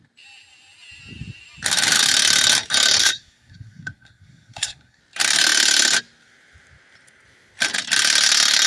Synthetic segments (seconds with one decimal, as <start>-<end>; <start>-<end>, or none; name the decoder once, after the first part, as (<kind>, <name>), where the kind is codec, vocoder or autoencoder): 3.0-5.0 (codec, SNAC)